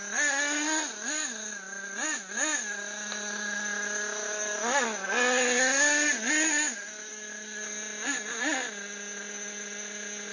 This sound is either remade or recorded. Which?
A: recorded